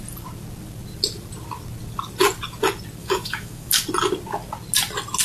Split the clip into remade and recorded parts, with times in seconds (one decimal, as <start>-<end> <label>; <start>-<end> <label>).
0.0-3.0 recorded; 3.0-3.8 remade; 3.8-5.2 recorded